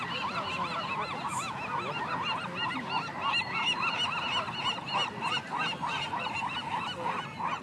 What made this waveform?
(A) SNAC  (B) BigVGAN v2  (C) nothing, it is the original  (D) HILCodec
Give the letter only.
C